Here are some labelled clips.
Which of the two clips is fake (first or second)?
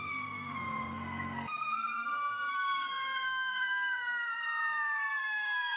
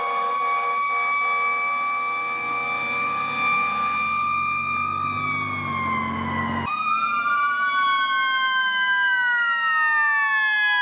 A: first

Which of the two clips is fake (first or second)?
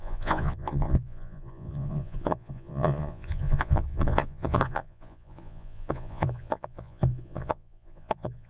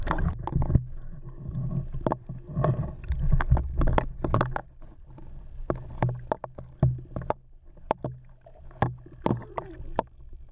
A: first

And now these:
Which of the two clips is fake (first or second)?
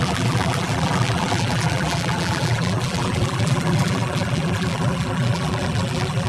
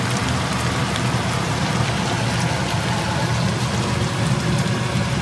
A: first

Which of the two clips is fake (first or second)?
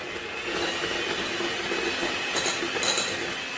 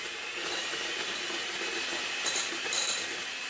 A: second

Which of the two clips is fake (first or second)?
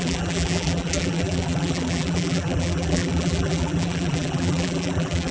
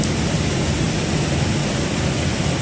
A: first